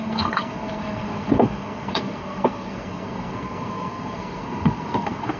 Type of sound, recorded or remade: remade